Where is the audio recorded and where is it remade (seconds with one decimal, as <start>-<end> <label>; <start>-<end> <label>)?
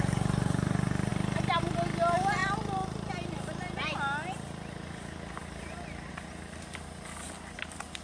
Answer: 0.0-8.0 recorded